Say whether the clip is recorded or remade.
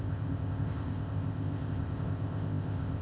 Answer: remade